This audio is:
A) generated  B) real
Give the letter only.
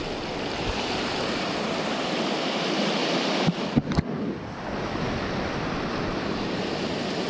B